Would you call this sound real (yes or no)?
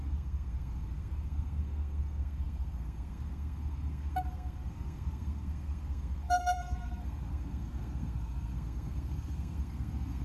no